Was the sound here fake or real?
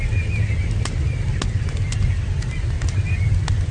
real